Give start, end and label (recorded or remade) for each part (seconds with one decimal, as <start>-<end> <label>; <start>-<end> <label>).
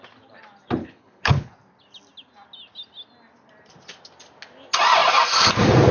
0.0-0.8 recorded; 0.8-1.5 remade; 1.5-5.9 recorded